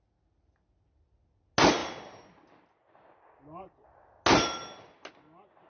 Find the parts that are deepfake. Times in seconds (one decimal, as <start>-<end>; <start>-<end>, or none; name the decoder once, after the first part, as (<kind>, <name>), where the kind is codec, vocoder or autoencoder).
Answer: none